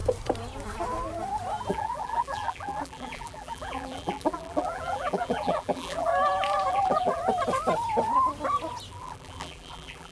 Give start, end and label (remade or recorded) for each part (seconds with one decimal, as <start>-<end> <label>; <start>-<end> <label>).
0.0-1.7 recorded; 1.7-6.1 remade; 6.1-6.7 recorded; 6.7-7.2 remade; 7.2-8.9 recorded; 8.9-10.1 remade